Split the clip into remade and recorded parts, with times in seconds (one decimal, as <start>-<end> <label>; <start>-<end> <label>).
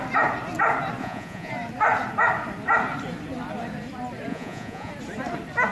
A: 0.0-1.0 recorded; 1.0-1.5 remade; 1.5-4.3 recorded; 4.3-4.9 remade; 4.9-5.7 recorded